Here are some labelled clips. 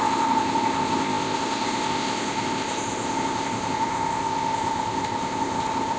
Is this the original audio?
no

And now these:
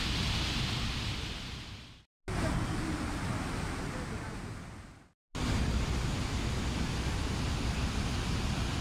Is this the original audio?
yes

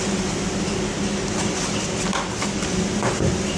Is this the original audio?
yes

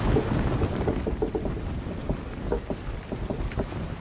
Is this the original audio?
yes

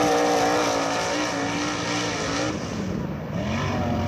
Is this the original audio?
yes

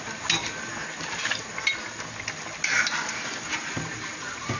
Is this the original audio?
yes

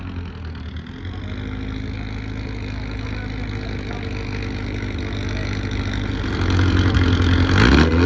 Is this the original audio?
yes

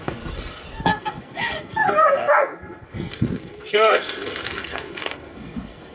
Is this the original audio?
no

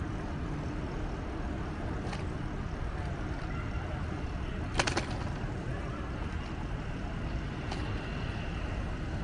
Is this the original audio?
yes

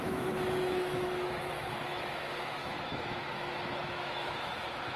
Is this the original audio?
no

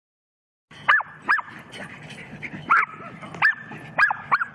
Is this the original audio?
yes